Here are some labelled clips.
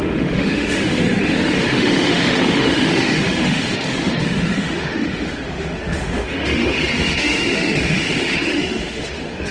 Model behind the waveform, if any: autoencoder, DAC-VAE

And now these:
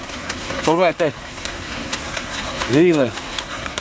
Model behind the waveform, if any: codec, SNAC